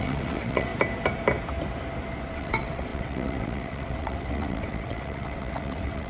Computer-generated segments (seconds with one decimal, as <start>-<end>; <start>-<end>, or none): 0.0-0.7; 2.3-6.1